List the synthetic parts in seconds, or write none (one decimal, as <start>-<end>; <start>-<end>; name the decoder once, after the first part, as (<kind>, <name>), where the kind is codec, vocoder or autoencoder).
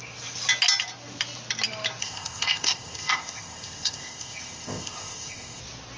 2.0-5.6 (codec, ZipCodec)